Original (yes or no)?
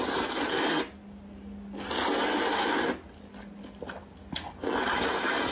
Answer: yes